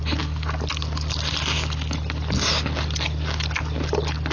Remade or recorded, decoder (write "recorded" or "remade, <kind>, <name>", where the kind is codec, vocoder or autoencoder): recorded